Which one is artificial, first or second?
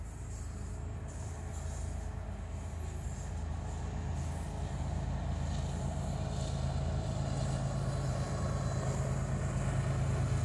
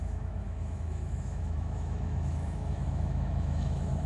second